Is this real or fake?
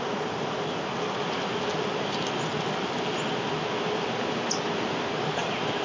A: real